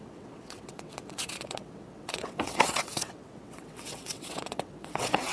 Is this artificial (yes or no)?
yes